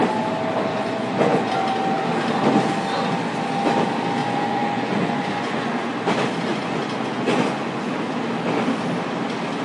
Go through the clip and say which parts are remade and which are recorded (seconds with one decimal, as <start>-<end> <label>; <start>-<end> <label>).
0.0-0.7 recorded; 0.7-1.5 remade; 1.5-4.2 recorded; 4.2-5.9 remade; 5.9-6.5 recorded; 6.5-7.9 remade; 7.9-9.6 recorded